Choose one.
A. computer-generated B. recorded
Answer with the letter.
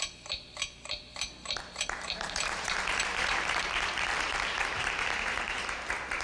A